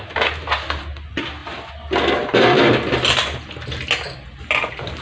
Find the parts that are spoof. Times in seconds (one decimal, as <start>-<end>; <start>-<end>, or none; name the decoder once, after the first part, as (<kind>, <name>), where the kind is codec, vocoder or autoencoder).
none